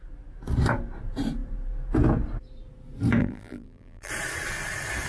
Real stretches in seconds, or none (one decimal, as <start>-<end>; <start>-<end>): 0.0-3.2; 4.1-5.1